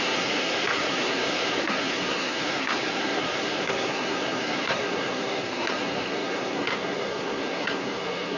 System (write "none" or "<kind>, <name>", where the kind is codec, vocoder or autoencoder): codec, SNAC